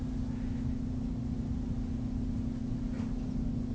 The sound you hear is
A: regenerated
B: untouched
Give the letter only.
B